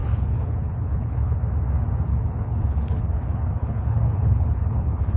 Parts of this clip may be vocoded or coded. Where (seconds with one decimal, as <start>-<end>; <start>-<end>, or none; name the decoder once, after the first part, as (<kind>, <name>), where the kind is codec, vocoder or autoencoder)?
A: 0.0-1.4 (codec, HILCodec); 2.1-5.2